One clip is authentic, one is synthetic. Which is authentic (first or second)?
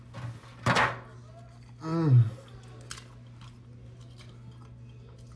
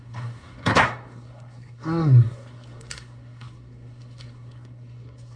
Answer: first